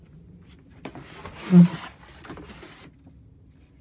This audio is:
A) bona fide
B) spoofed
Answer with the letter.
A